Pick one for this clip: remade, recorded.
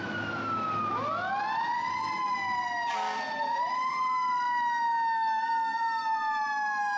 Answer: recorded